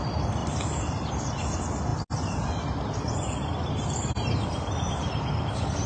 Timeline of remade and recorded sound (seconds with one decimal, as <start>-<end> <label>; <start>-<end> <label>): 0.0-5.9 recorded